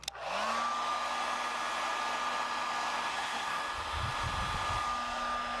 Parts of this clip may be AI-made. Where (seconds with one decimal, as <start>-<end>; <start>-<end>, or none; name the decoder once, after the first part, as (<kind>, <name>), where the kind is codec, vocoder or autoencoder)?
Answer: 3.1-3.6 (codec, SNAC)